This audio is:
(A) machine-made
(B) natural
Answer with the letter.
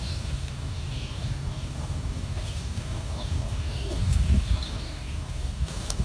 A